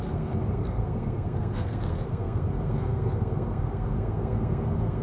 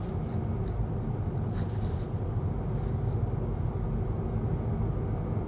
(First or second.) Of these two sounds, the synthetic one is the first